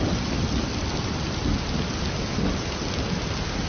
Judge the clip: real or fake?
real